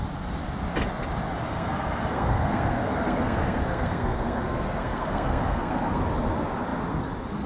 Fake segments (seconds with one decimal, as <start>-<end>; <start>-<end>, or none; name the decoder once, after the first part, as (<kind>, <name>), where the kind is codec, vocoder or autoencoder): 1.5-6.0 (codec, SNAC)